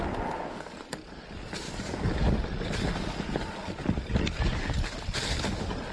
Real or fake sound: real